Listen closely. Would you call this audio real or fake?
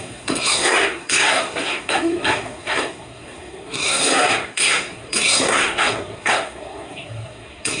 fake